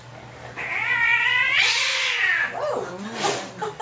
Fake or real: real